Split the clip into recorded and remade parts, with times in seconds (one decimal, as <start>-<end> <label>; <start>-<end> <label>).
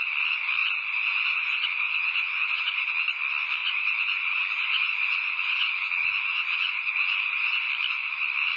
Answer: 0.0-0.6 recorded; 0.6-2.9 remade; 2.9-3.6 recorded; 3.6-7.7 remade; 7.7-8.6 recorded